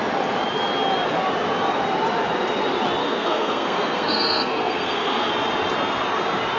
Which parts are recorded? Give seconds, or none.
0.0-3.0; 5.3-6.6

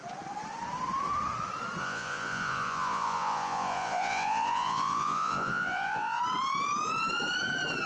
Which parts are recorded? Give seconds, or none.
0.0-1.8; 6.2-7.9

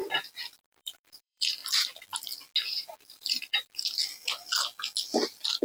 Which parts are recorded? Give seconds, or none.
0.0-0.6; 1.6-2.7; 4.0-5.6

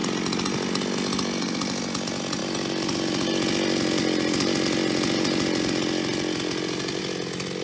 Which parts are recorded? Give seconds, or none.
0.0-7.6